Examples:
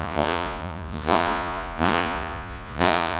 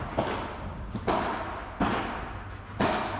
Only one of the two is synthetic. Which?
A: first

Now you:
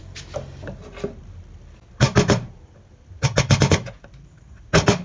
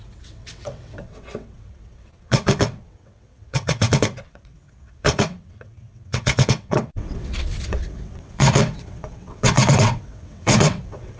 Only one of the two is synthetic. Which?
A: second